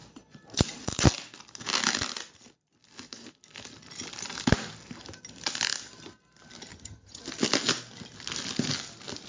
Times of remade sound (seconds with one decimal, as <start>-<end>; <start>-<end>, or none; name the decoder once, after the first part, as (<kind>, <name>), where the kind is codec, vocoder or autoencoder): 6.7-7.2 (vocoder, HiFi-GAN)